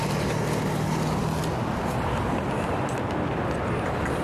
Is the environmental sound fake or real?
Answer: real